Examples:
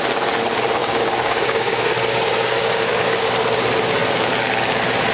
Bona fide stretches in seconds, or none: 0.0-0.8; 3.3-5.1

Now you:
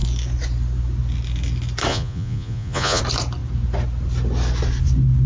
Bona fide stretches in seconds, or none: 0.0-1.9; 3.0-5.3

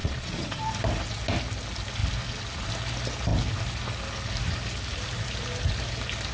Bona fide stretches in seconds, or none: 0.6-6.3

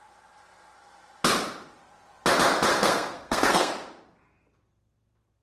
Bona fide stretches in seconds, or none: 0.0-2.7; 3.7-5.4

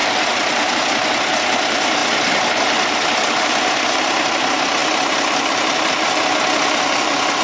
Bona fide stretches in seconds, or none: 0.0-7.4

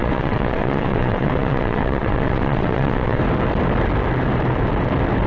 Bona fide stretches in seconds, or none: 3.2-5.3

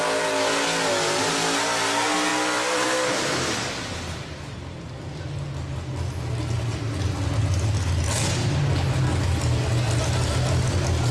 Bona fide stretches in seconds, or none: 0.0-2.3; 4.0-11.1